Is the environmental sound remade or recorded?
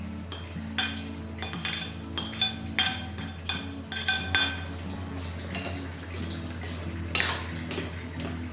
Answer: recorded